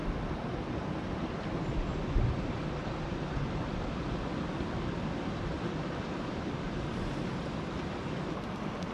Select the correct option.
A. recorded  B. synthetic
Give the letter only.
A